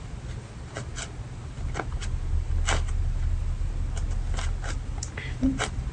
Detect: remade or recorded recorded